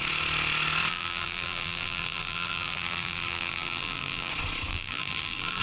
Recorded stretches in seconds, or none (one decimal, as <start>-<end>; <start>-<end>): 0.0-0.9; 4.3-4.7